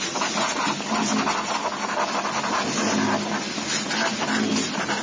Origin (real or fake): real